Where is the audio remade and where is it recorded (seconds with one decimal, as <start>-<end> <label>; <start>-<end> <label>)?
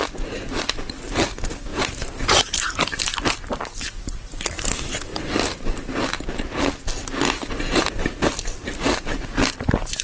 0.0-1.7 recorded; 1.7-2.9 remade; 2.9-10.0 recorded